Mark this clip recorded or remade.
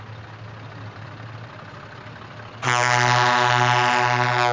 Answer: recorded